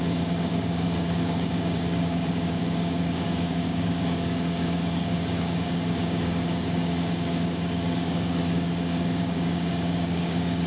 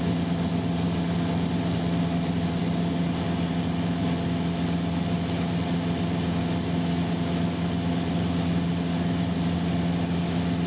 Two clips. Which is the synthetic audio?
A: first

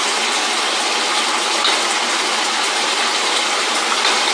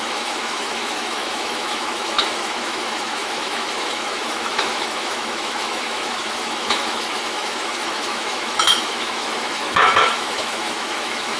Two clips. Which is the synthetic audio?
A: second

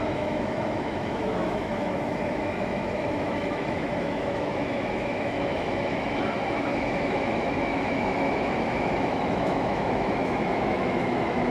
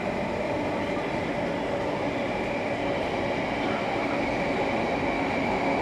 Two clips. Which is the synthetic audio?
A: first